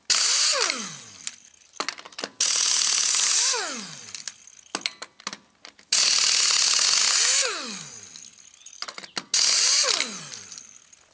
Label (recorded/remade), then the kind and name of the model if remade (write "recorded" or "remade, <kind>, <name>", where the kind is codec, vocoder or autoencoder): recorded